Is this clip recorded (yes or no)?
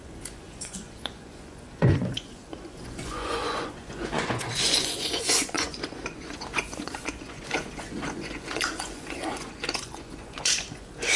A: no